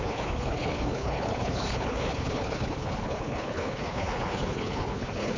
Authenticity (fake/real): fake